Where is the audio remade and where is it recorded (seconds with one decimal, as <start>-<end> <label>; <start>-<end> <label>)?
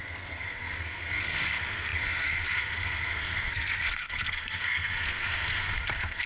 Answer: 0.0-6.3 remade